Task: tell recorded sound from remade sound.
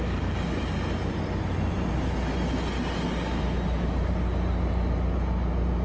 recorded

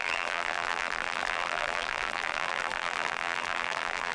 remade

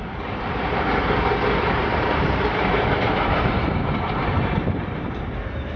remade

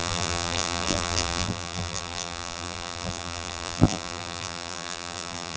remade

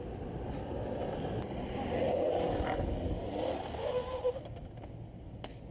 recorded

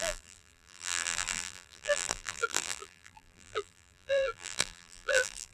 remade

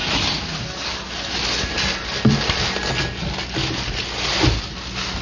recorded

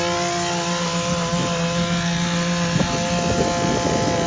recorded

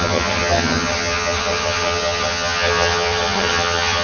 remade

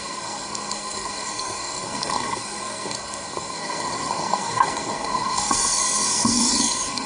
remade